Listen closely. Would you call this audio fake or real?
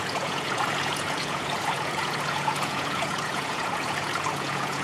fake